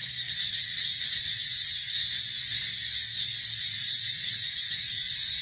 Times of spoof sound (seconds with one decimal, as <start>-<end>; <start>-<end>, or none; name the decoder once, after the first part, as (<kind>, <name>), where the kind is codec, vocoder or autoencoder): 0.5-2.0 (vocoder, Vocos); 3.6-5.4